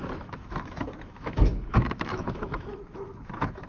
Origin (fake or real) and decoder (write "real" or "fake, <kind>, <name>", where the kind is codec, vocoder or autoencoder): fake, autoencoder, DAC-VAE